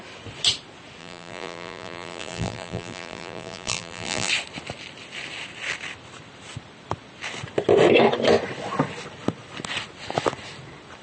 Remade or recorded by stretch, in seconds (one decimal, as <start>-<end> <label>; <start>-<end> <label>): 0.0-1.0 recorded; 1.0-4.3 remade; 4.3-11.0 recorded